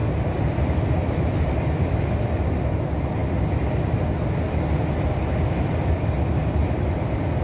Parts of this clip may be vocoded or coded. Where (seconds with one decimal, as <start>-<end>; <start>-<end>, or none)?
0.0-2.3